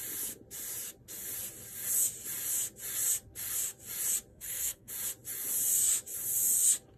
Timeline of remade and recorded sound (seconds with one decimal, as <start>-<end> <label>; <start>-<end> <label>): 0.0-4.3 recorded; 4.3-4.9 remade; 4.9-7.0 recorded